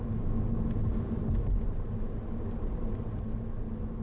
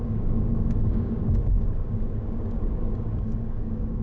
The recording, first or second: first